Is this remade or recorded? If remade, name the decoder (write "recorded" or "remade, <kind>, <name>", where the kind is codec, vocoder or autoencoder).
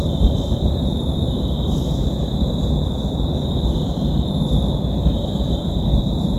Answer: remade, vocoder, BigVGAN v2